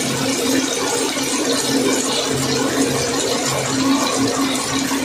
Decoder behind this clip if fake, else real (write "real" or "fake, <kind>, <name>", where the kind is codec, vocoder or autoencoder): real